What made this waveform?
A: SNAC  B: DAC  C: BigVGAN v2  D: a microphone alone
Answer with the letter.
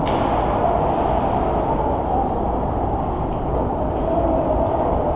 C